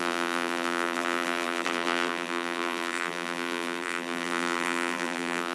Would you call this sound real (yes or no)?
no